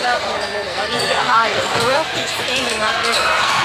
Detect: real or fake fake